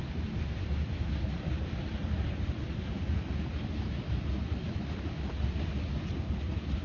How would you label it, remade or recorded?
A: recorded